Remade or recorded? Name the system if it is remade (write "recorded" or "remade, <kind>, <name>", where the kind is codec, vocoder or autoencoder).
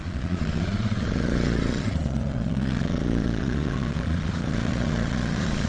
remade, vocoder, Vocos